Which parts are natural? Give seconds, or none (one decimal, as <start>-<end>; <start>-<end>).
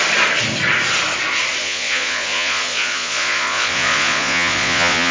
0.0-1.6